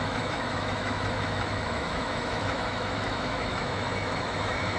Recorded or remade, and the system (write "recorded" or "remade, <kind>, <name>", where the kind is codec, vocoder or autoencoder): remade, autoencoder, DAC-VAE